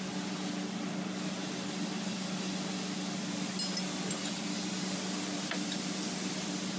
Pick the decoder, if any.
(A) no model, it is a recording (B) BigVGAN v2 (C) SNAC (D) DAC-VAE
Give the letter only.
A